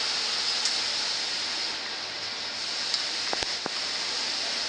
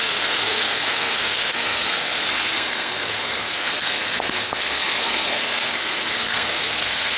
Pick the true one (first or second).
first